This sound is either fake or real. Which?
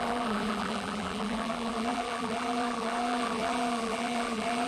fake